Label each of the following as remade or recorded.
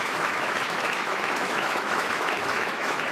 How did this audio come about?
remade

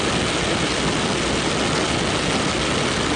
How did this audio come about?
recorded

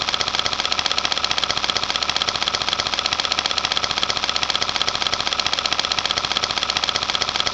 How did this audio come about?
recorded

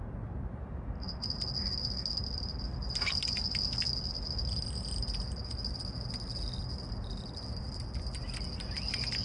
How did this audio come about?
recorded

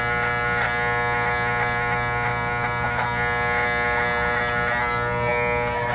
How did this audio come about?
recorded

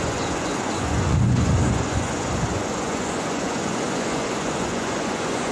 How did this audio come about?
remade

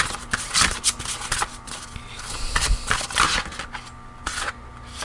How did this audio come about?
recorded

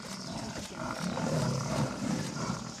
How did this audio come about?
remade